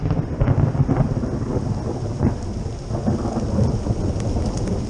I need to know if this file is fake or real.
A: real